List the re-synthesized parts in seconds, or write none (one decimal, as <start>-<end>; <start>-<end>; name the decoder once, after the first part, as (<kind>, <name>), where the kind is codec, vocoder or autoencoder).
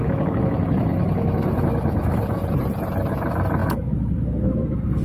0.0-2.4 (autoencoder, DAC-VAE); 3.1-5.0